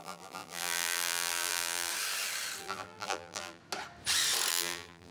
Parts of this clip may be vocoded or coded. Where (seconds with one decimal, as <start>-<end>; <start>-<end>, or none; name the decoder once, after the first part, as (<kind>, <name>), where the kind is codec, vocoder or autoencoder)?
0.0-1.9 (vocoder, BigVGAN v2); 2.6-3.6; 4.5-5.1